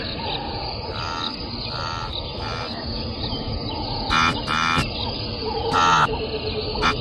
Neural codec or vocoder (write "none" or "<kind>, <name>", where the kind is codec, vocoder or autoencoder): none